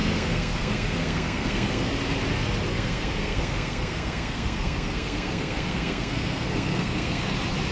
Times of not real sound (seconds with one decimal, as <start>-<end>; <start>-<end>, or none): 0.0-1.9; 2.7-7.3